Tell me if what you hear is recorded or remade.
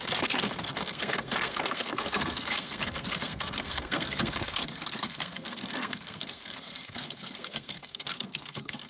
remade